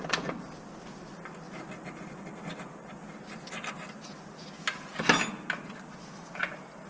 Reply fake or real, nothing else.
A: real